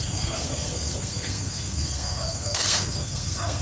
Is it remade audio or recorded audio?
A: remade